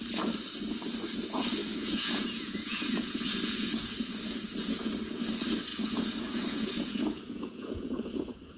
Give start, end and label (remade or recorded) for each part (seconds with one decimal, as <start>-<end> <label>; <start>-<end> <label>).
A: 0.0-1.6 recorded; 1.6-4.9 remade; 4.9-5.7 recorded; 5.7-8.6 remade